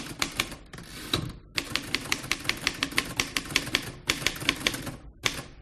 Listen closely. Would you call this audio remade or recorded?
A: recorded